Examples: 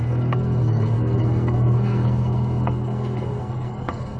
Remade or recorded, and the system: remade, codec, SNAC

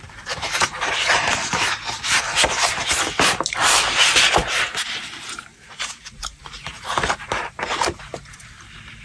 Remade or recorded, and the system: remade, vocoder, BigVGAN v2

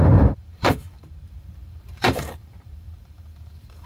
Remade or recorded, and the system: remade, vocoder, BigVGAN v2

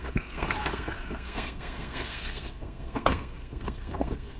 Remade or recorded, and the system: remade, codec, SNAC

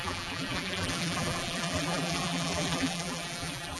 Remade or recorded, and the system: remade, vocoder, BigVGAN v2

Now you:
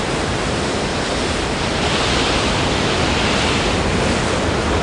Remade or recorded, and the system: recorded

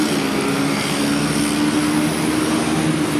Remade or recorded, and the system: recorded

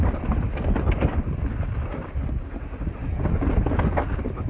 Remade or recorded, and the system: recorded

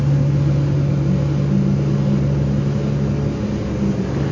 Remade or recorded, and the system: recorded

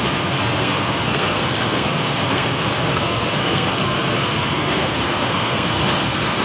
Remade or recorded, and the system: remade, codec, SNAC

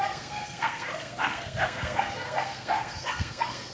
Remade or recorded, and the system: remade, codec, SNAC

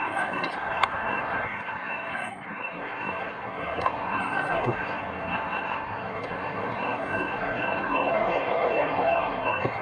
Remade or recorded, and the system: remade, codec, SNAC